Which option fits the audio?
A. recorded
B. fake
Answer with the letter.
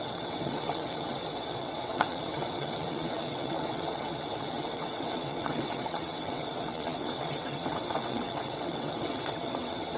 B